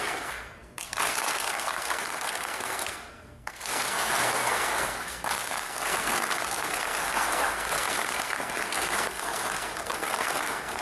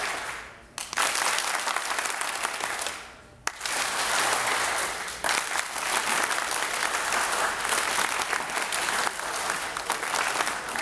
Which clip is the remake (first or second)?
first